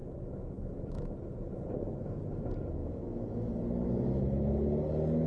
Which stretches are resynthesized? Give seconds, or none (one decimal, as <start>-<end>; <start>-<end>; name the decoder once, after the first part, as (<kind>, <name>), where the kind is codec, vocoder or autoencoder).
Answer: 0.0-1.1 (autoencoder, DAC-VAE); 2.8-3.4